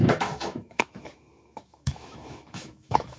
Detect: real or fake fake